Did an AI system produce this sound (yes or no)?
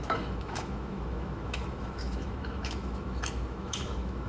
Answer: yes